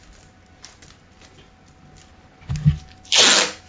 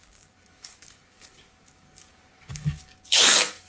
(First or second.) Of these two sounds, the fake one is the second